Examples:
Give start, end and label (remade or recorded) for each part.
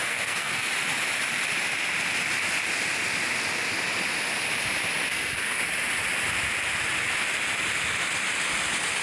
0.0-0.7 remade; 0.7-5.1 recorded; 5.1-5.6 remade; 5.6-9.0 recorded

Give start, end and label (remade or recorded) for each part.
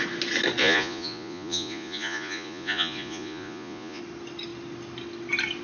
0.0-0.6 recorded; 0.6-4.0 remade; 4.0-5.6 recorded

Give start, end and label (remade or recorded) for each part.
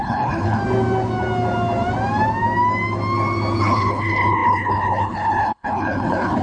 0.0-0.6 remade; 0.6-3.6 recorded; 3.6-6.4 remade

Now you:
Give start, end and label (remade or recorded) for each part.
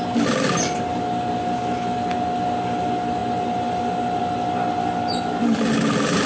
0.0-6.3 recorded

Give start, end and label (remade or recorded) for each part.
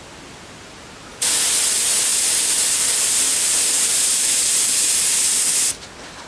0.0-2.1 recorded; 2.1-5.6 remade; 5.6-6.3 recorded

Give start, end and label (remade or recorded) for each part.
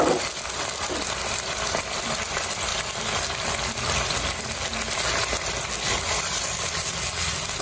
0.0-2.7 remade; 2.7-7.6 recorded